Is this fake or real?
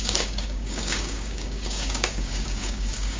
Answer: fake